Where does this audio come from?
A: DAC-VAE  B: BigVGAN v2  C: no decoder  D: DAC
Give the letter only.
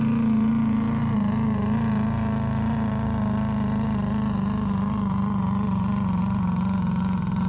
C